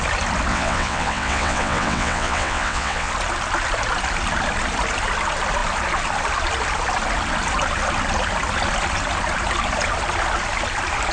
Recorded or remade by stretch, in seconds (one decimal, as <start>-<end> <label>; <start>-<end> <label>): 0.0-0.5 recorded; 0.5-3.1 remade; 3.1-11.1 recorded